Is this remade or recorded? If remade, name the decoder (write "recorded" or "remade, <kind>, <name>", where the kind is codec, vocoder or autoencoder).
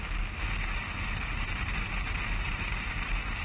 recorded